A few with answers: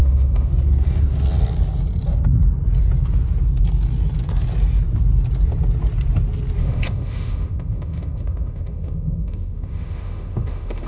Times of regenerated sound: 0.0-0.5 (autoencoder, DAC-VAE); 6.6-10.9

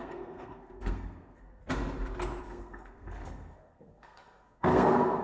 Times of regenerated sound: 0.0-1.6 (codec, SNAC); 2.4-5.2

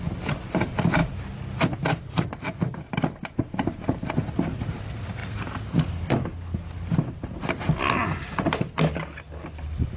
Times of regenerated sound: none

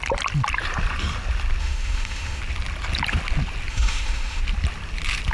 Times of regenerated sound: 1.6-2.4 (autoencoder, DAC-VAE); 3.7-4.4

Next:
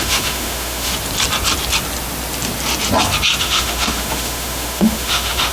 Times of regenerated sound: 0.0-0.9 (autoencoder, DAC-VAE); 3.4-5.5